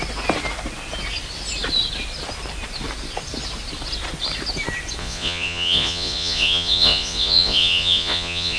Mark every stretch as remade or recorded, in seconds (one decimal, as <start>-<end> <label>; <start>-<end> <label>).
0.0-5.0 recorded; 5.0-8.6 remade